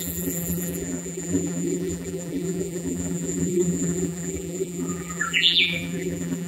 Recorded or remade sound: remade